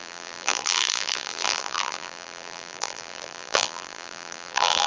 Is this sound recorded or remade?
remade